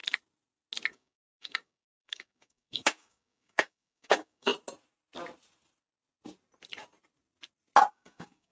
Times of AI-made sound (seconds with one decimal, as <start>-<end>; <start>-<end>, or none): 0.9-4.5; 7.9-8.5